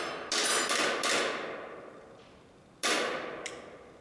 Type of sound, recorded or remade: recorded